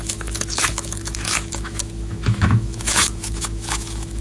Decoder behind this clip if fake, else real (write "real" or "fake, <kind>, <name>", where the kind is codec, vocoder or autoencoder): fake, autoencoder, DAC-VAE